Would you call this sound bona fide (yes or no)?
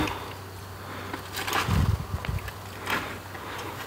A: yes